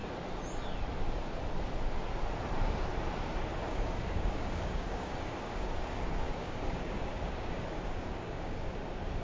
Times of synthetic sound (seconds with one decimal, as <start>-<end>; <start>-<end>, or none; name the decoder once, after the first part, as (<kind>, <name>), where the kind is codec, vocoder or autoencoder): 3.5-8.7 (codec, DAC)